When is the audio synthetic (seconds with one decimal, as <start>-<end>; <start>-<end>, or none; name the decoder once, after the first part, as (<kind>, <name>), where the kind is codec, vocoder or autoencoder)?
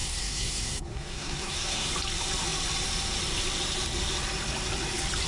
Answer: 0.0-1.9 (codec, SNAC)